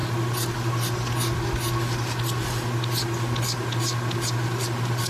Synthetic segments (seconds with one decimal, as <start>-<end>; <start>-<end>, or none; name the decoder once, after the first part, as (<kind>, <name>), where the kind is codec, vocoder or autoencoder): none